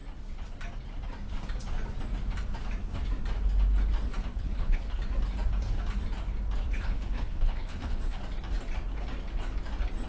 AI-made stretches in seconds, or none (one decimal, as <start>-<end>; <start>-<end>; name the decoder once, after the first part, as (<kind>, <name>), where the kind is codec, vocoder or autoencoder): 4.3-5.0 (codec, HILCodec); 6.7-8.2